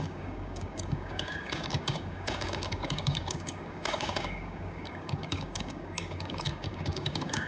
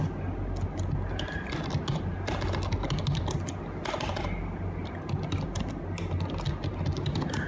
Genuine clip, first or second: second